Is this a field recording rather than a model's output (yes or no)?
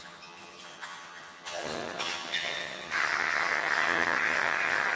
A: no